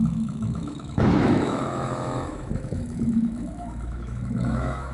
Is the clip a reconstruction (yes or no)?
yes